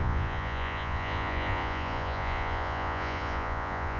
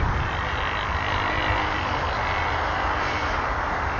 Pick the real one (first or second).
second